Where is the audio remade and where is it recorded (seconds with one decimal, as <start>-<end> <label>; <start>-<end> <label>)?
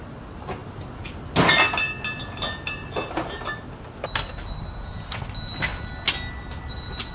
0.0-7.1 recorded